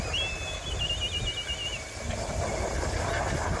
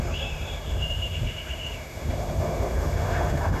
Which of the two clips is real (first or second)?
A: first